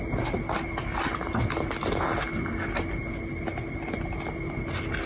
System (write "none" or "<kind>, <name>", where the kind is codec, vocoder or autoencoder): none